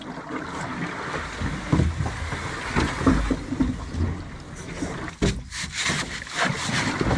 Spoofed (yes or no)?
no